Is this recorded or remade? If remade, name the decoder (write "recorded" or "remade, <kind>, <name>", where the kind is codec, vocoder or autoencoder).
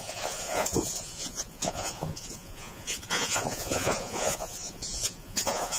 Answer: remade, vocoder, Vocos